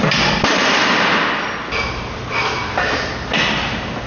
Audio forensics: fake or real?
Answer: real